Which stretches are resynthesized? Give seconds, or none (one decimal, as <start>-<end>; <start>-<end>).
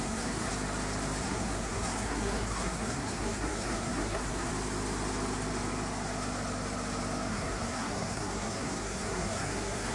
0.0-0.5; 1.2-4.5; 7.3-9.9